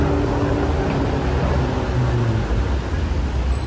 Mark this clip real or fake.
real